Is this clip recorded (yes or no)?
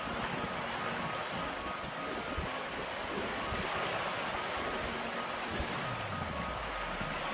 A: yes